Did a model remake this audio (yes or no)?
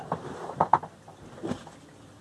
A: no